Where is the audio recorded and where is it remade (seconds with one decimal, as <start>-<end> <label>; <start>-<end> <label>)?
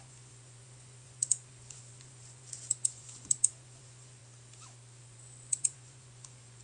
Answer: 0.0-4.2 remade; 4.2-5.0 recorded; 5.0-6.6 remade